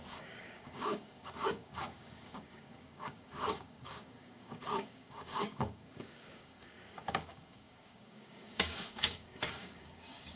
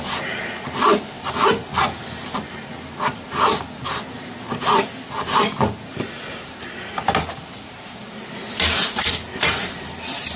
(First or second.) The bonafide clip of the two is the second